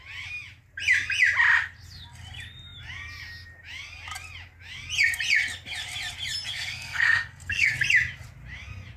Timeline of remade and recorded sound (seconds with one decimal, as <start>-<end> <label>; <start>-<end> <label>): 0.0-6.5 recorded; 6.5-7.7 remade; 7.7-9.0 recorded